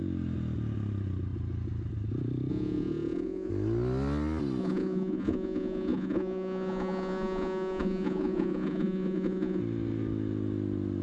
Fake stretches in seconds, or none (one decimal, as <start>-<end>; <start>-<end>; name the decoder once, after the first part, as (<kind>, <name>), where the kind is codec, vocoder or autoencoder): 2.5-3.5 (vocoder, Vocos); 4.6-9.6